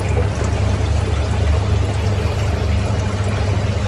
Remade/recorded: recorded